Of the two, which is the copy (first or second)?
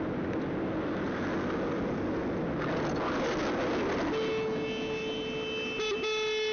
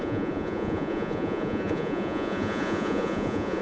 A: second